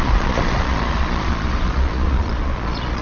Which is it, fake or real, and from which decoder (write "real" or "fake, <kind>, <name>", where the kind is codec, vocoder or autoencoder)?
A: fake, vocoder, Vocos